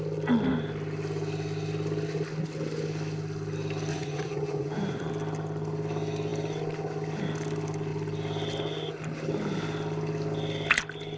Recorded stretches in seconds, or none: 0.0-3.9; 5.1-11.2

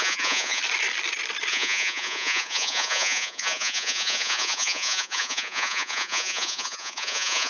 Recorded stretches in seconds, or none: 0.6-1.5

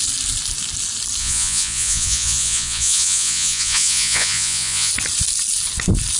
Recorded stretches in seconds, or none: 0.0-1.2; 4.9-6.2

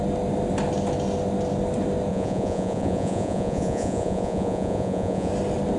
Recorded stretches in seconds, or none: 0.0-2.1; 5.3-5.8

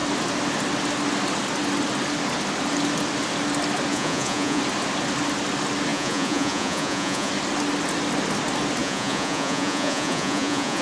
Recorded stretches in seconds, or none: 0.0-3.9; 4.6-5.9; 7.3-8.8

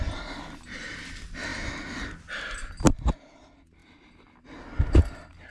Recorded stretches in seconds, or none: 0.0-5.5

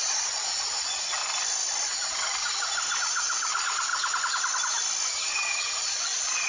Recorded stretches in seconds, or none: 1.2-1.8; 2.4-3.0; 3.9-5.8